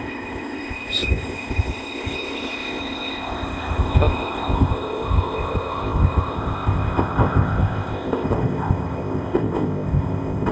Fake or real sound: fake